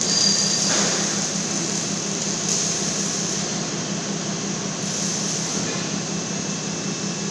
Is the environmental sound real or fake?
real